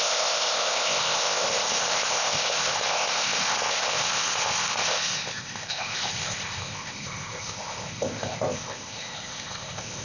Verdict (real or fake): fake